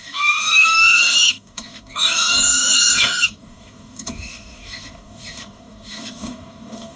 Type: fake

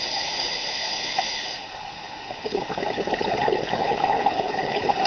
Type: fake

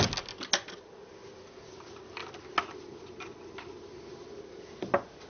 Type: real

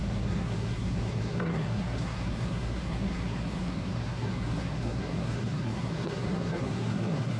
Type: fake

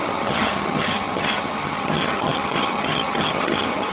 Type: fake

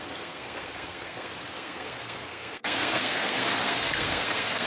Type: fake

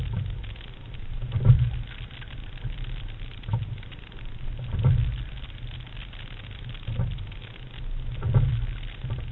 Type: real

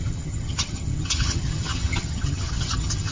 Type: fake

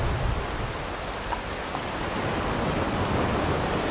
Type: real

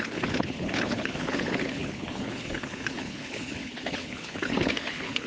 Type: fake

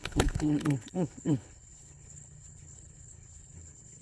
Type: fake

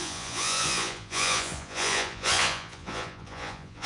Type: fake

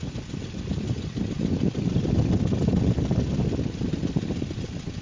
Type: real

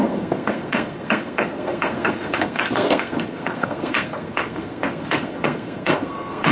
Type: fake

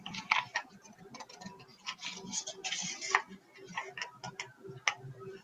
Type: real